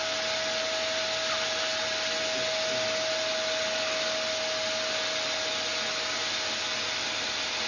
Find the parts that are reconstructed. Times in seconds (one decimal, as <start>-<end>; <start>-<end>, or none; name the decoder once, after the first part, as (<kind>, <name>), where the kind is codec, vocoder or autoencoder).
none

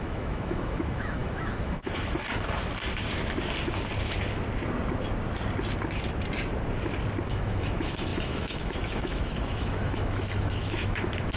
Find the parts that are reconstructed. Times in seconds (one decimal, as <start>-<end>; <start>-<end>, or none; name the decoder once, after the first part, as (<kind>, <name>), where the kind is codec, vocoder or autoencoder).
0.0-2.2 (autoencoder, DAC-VAE); 7.3-11.4